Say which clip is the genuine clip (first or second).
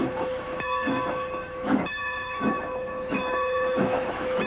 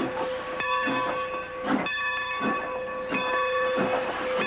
second